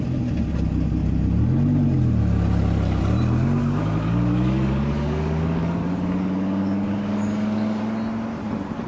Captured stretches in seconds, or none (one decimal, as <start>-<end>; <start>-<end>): 0.0-3.6; 7.8-8.9